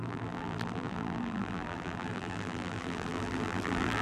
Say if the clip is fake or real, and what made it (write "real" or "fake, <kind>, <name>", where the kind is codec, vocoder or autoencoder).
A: fake, vocoder, BigVGAN v2